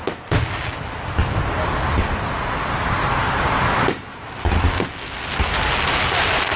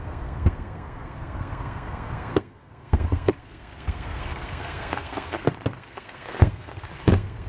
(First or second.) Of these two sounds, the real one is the first